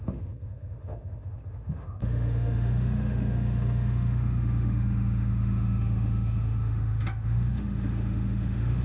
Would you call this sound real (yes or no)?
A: no